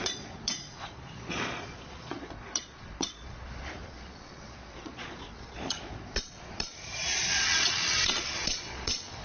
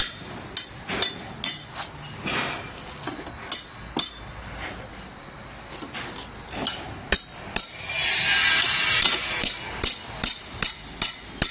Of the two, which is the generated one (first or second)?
first